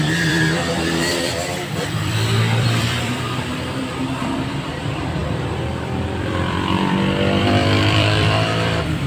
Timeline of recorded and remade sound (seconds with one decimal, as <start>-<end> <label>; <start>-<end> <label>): 0.0-5.2 remade; 5.2-6.2 recorded; 6.2-9.1 remade